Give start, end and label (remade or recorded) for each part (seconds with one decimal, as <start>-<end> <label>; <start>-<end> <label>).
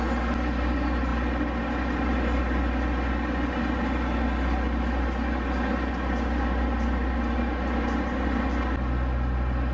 0.0-9.7 recorded